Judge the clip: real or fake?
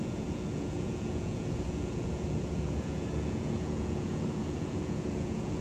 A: fake